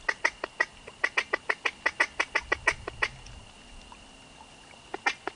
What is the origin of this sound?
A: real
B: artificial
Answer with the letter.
A